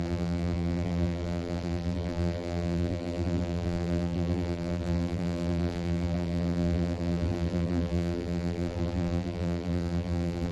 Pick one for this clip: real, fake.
fake